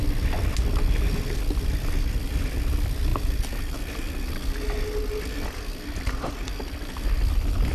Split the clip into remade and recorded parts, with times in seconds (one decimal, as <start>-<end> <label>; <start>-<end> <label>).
0.0-7.7 recorded